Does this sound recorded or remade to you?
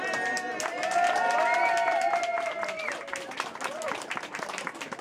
recorded